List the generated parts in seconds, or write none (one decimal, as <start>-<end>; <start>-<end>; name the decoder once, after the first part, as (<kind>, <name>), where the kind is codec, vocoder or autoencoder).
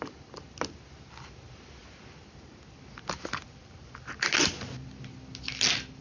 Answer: none